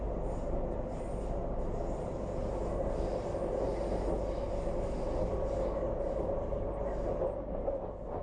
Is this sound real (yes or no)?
yes